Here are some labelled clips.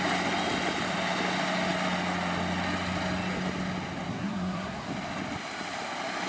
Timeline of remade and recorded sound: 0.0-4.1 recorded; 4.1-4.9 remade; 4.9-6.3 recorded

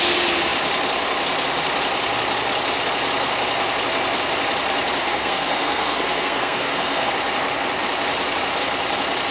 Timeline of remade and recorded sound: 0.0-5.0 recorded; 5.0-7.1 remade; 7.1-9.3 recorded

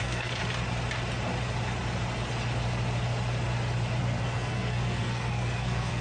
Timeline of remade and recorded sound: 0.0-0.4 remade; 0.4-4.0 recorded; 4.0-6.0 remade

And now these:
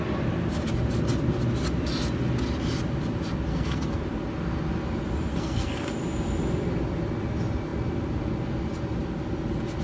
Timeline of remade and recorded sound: 0.0-3.5 recorded; 3.5-4.0 remade; 4.0-5.3 recorded; 5.3-5.9 remade; 5.9-9.8 recorded